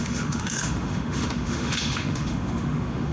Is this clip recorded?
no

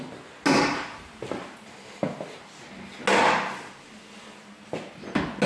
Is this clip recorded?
yes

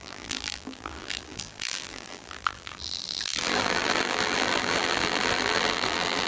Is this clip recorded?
no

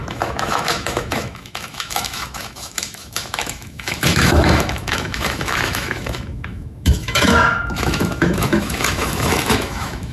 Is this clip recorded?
no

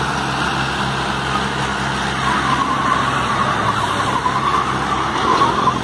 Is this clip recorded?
yes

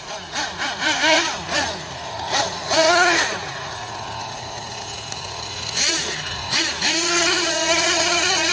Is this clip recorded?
no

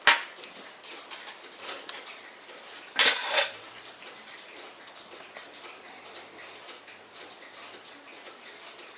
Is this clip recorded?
yes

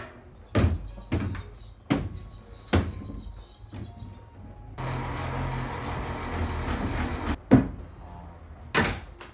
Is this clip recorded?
yes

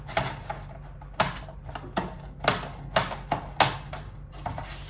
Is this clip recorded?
yes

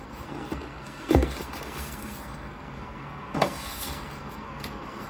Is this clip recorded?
no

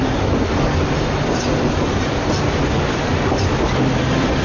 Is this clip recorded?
yes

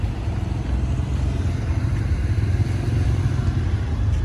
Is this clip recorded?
yes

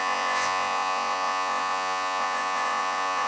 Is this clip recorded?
no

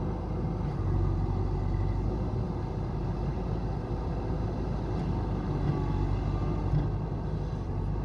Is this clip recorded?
yes